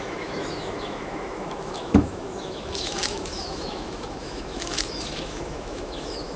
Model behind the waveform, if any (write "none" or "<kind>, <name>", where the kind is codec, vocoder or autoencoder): autoencoder, DAC-VAE